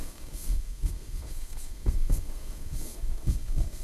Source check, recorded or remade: remade